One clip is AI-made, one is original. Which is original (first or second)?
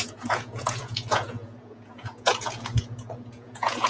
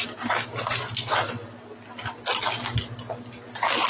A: second